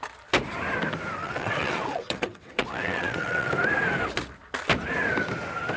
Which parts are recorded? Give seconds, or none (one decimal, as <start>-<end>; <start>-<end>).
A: 0.0-1.2; 3.5-5.8